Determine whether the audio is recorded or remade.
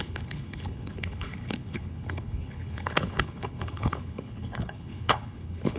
remade